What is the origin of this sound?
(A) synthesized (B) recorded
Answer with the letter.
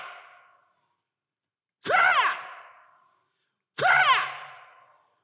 B